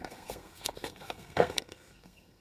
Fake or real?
fake